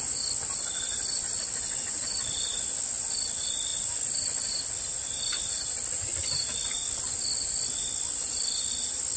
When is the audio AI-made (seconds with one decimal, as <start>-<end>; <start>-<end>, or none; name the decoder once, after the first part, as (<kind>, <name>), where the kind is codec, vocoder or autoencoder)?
none